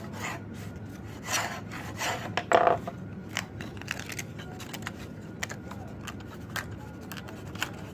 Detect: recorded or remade recorded